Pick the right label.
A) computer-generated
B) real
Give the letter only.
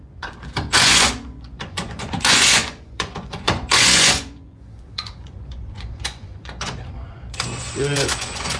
A